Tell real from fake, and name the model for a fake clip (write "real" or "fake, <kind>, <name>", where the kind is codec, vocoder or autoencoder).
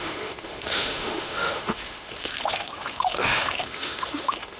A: fake, autoencoder, DAC-VAE